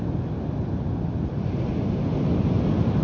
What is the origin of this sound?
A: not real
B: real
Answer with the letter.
B